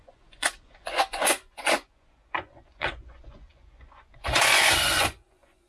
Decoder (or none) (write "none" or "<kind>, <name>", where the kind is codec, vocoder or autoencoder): vocoder, Vocos